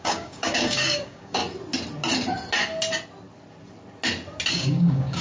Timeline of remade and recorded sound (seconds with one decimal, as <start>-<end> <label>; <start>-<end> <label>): 0.0-1.4 remade; 1.4-4.5 recorded; 4.5-5.2 remade